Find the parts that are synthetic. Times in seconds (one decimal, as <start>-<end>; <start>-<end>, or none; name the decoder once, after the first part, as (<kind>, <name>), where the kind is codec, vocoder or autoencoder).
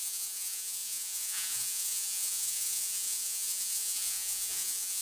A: 0.0-5.0 (vocoder, Vocos)